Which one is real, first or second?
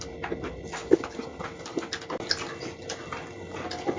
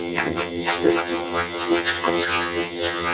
first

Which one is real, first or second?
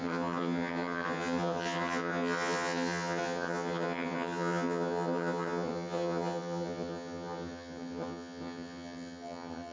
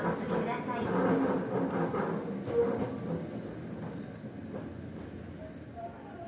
second